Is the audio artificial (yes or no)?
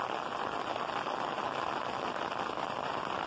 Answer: no